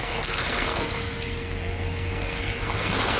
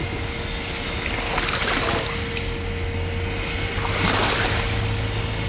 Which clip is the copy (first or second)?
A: first